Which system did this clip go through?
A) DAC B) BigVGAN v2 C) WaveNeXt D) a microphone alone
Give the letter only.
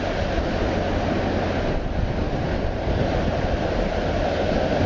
D